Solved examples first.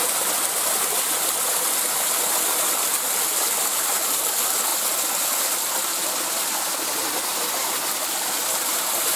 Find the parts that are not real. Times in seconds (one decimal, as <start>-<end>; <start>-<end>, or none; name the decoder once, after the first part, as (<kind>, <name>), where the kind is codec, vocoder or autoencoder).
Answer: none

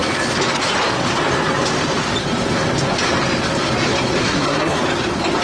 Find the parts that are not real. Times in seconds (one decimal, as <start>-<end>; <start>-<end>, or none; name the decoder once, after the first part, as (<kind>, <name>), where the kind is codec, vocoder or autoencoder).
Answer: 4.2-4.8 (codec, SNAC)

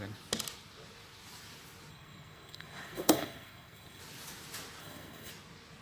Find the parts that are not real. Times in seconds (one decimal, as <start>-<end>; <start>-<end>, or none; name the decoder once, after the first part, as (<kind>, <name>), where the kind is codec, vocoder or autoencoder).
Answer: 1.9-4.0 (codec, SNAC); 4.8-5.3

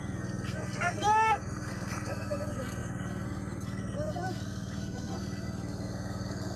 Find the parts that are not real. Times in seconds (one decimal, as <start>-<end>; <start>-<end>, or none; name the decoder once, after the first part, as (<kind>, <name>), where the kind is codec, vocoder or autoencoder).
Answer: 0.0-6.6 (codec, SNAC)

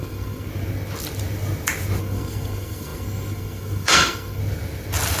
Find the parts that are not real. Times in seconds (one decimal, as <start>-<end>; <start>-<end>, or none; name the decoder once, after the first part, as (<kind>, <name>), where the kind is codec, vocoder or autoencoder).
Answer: 0.0-0.5 (codec, SNAC); 2.0-4.4

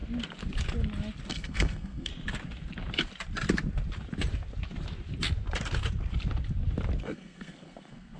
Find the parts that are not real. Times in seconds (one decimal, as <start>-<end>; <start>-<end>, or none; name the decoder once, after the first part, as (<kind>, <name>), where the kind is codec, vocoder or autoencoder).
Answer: 1.3-2.1 (codec, SNAC); 7.0-8.2

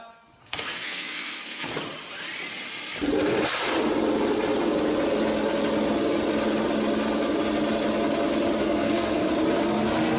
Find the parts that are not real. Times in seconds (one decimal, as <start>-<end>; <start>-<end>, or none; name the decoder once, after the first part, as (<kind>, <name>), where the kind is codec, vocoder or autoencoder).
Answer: 0.4-1.7 (codec, SNAC); 8.6-9.3

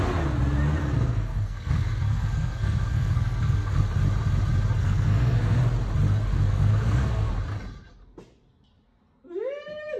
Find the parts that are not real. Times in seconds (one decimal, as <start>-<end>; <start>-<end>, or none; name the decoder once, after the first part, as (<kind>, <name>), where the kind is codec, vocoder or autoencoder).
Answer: 0.8-3.8 (codec, SNAC); 4.8-5.6; 6.3-7.3